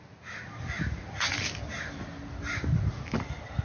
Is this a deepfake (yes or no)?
no